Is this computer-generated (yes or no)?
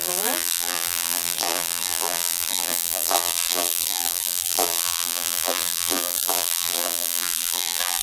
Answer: yes